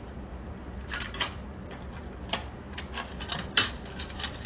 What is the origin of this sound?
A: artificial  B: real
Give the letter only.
B